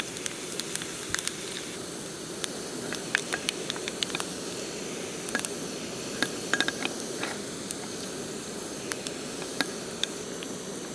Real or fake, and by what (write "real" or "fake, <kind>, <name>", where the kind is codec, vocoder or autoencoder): real